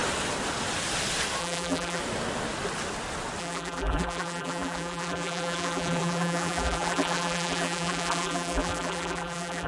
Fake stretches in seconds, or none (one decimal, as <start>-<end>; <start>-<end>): 1.4-2.0; 3.4-9.7